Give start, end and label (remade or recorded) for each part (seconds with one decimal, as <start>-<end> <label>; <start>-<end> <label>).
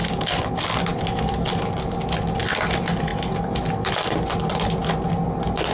0.0-5.7 recorded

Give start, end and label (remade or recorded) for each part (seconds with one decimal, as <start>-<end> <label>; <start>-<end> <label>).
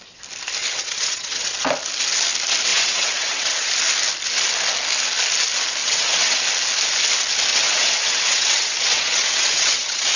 0.0-0.6 recorded; 0.6-1.7 remade; 1.7-2.7 recorded; 2.7-3.7 remade; 3.7-5.8 recorded; 5.8-6.4 remade; 6.4-7.5 recorded; 7.5-10.2 remade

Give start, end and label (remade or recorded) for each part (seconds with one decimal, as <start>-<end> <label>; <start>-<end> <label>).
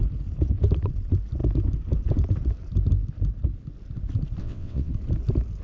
0.0-4.4 recorded; 4.4-4.9 remade; 4.9-5.6 recorded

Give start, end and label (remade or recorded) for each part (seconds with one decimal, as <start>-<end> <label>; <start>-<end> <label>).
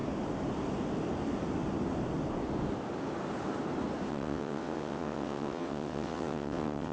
0.0-4.1 recorded; 4.1-6.9 remade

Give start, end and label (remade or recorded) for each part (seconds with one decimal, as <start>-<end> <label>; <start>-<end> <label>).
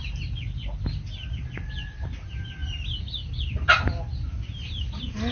0.0-5.3 recorded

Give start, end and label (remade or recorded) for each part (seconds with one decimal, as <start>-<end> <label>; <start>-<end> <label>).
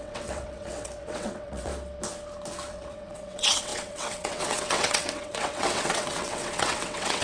0.0-1.7 remade; 1.7-2.7 recorded; 2.7-7.2 remade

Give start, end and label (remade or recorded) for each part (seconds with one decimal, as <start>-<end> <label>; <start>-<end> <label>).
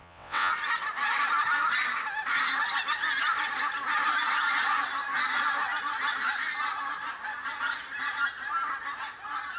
0.0-0.5 remade; 0.5-9.6 recorded